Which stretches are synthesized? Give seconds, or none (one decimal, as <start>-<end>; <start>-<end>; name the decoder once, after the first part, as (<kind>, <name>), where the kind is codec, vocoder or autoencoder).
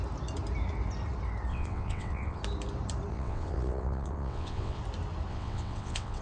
1.5-2.4 (vocoder, WaveNeXt); 3.1-4.8; 5.3-6.2